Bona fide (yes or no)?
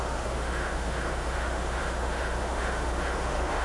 no